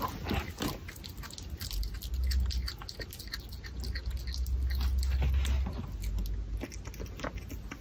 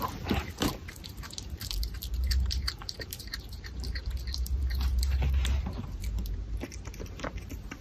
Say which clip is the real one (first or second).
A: first